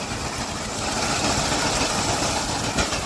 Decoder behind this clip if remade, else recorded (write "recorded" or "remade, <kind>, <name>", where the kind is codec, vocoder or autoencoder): recorded